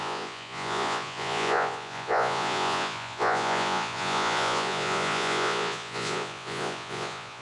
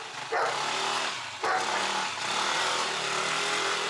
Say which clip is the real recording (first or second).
second